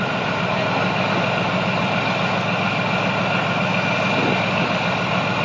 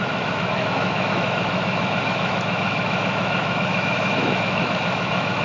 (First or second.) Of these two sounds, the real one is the first